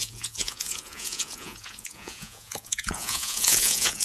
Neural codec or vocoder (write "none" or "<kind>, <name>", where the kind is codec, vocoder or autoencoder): vocoder, Vocos